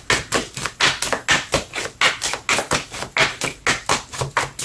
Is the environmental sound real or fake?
real